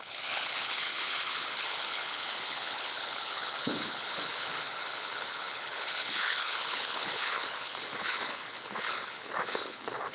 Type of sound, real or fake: fake